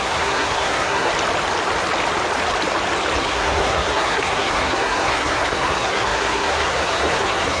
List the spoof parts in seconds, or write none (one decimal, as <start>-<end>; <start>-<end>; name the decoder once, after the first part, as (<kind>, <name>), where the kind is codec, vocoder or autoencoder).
0.0-1.1 (codec, SNAC); 3.2-7.6